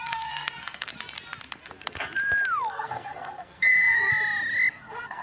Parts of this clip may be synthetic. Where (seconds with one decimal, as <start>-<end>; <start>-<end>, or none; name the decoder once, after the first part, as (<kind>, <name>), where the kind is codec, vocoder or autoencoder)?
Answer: 0.0-0.9 (codec, SNAC); 2.7-4.1; 4.7-5.2